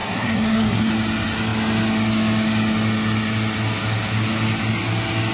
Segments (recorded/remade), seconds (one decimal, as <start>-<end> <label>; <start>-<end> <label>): 0.0-0.9 remade; 0.9-5.3 recorded